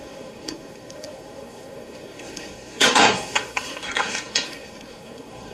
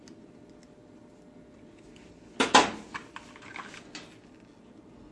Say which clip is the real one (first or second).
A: second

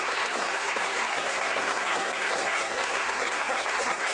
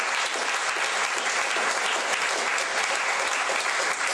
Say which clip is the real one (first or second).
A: second